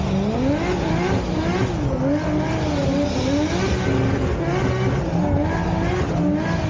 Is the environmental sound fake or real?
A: real